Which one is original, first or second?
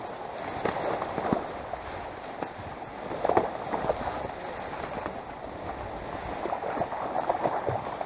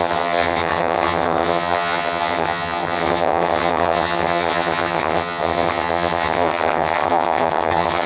first